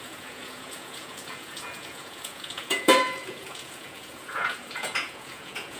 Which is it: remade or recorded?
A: remade